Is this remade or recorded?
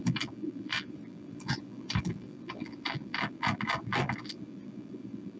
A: remade